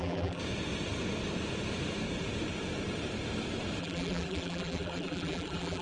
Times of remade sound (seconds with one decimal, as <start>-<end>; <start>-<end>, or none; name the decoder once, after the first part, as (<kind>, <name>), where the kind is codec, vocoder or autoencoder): 0.0-0.4 (vocoder, BigVGAN v2); 3.8-5.8